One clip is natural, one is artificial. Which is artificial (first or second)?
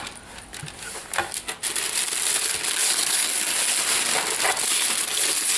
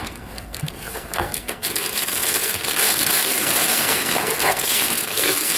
second